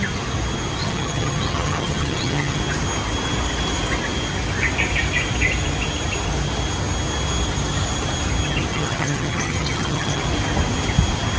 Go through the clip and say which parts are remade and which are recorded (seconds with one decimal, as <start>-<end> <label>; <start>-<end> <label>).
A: 0.0-0.8 recorded; 0.8-2.6 remade; 2.6-8.7 recorded; 8.7-10.2 remade; 10.2-11.4 recorded

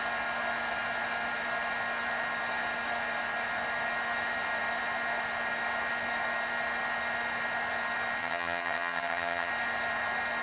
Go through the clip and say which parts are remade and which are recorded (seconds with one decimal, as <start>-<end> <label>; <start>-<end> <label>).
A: 0.0-8.2 recorded; 8.2-9.5 remade; 9.5-10.4 recorded